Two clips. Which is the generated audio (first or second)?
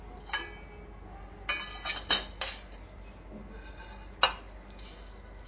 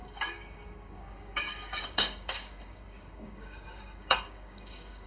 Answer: second